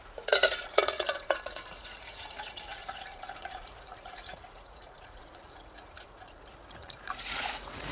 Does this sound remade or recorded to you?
remade